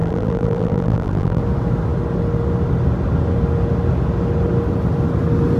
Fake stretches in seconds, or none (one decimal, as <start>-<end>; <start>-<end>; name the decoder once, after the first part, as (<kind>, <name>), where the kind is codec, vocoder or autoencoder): 0.0-1.4 (vocoder, BigVGAN v2)